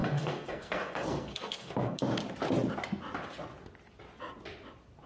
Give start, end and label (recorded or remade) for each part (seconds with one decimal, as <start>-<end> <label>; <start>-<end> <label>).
0.0-2.0 remade; 2.0-5.1 recorded